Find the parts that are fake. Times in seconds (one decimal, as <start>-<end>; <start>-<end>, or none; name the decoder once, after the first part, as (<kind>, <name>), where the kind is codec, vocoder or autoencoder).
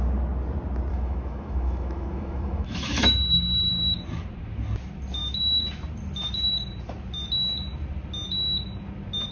0.9-3.7 (autoencoder, DAC-VAE)